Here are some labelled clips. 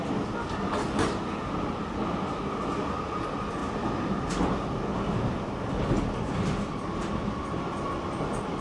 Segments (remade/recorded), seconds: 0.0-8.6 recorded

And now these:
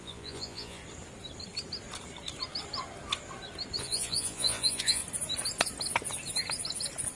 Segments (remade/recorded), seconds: 0.0-0.8 remade; 0.8-3.8 recorded; 3.8-5.0 remade; 5.0-7.2 recorded